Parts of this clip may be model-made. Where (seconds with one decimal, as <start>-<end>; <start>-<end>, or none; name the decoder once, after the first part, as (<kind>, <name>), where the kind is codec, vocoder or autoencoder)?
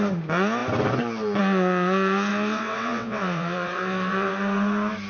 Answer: 2.3-4.3 (vocoder, WaveNeXt)